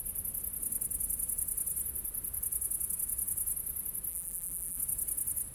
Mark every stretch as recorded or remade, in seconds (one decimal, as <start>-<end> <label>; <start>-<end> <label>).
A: 0.0-4.1 recorded; 4.1-4.8 remade; 4.8-5.5 recorded